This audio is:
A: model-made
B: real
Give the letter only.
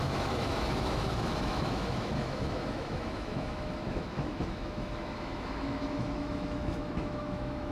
A